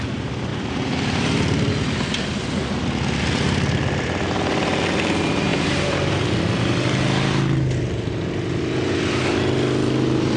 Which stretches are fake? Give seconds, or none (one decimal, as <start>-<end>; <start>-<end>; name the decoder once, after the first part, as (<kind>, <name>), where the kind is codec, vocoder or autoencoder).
0.5-1.7 (vocoder, BigVGAN v2); 5.5-6.3